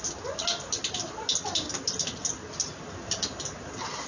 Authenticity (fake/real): real